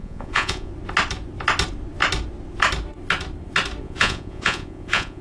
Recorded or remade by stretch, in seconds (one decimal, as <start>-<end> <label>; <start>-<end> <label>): 0.0-0.7 remade; 0.7-3.8 recorded; 3.8-5.2 remade